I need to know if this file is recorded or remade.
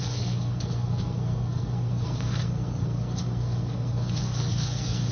remade